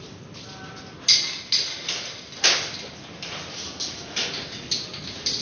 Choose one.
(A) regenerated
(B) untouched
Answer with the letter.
B